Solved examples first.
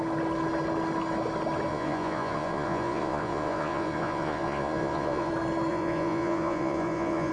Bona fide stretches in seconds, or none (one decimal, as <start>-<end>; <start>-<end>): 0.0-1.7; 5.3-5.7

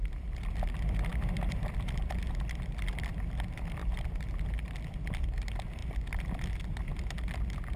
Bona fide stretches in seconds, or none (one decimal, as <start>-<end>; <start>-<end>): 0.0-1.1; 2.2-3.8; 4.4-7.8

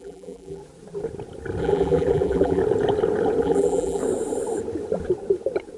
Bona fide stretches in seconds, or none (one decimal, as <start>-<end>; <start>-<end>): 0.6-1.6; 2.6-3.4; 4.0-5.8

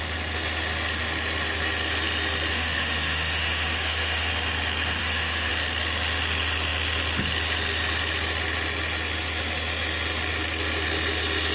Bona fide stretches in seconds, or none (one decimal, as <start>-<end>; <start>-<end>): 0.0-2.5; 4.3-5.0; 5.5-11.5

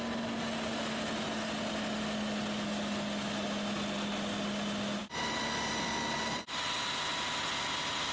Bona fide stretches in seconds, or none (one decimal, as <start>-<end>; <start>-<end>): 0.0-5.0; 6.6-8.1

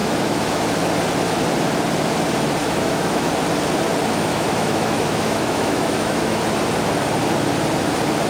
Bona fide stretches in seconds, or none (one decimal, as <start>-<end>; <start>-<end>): 0.6-2.6; 3.3-4.3; 6.4-8.3

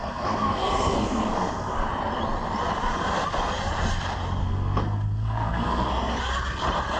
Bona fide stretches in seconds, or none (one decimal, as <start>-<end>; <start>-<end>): 1.9-4.4; 5.9-7.0